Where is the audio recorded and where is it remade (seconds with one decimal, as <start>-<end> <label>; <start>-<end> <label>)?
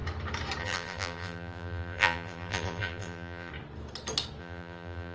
0.0-0.6 recorded; 0.6-3.5 remade; 3.5-4.4 recorded; 4.4-5.1 remade